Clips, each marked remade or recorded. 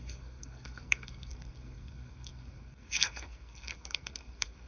remade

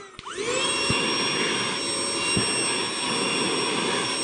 recorded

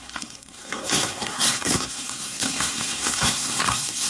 remade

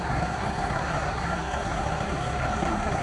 remade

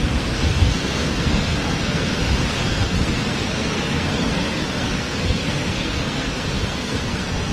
remade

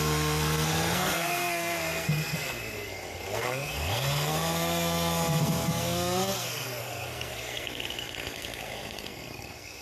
remade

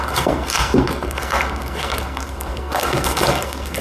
remade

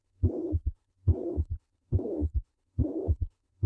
remade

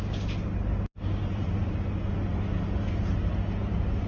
recorded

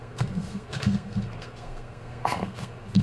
remade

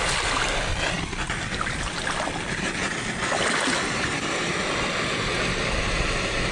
recorded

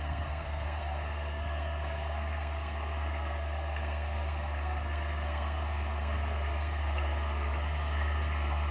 remade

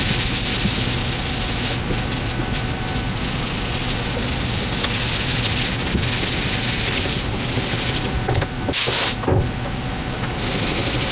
recorded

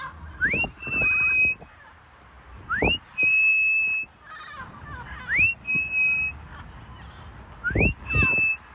recorded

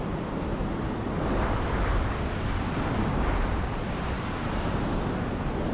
recorded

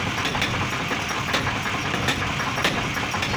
recorded